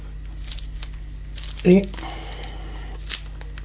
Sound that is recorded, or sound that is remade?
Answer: recorded